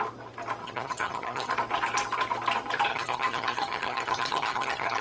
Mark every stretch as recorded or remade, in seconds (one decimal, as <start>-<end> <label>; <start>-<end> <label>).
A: 0.0-0.6 recorded; 0.6-1.5 remade; 1.5-2.9 recorded; 2.9-5.0 remade